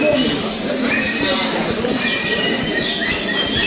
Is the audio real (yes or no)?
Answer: no